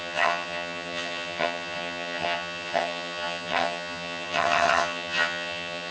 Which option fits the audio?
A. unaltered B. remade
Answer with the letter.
B